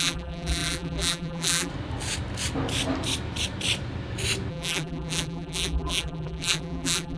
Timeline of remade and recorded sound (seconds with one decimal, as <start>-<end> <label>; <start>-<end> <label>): 0.0-1.7 remade; 1.7-4.5 recorded; 4.5-7.2 remade